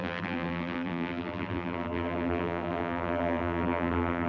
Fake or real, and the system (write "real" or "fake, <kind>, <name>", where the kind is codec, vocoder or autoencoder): fake, vocoder, BigVGAN v2